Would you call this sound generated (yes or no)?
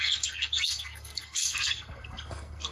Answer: yes